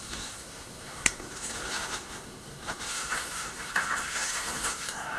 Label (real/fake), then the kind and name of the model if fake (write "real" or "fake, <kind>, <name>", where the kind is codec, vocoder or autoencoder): fake, codec, SNAC